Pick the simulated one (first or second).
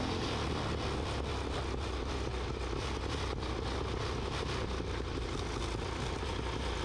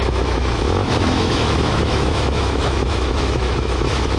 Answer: second